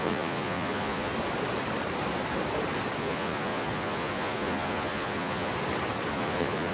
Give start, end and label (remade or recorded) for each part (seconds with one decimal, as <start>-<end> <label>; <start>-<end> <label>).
0.0-1.1 remade; 1.1-3.0 recorded; 3.0-5.5 remade; 5.5-6.1 recorded; 6.1-6.7 remade